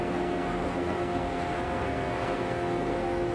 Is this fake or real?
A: fake